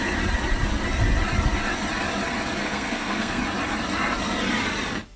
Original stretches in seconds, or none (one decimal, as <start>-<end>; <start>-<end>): 0.0-2.6; 3.4-5.2